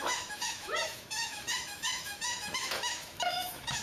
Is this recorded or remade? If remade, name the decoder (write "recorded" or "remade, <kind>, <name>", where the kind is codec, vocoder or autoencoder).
remade, autoencoder, DAC-VAE